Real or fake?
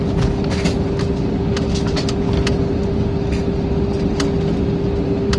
real